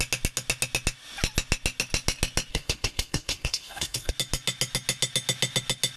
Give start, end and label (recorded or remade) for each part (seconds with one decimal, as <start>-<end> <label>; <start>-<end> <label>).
0.0-2.5 recorded; 2.5-4.1 remade; 4.1-6.0 recorded